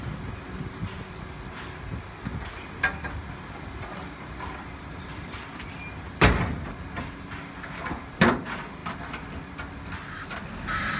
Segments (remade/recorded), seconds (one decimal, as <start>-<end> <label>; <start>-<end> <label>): 0.0-11.0 recorded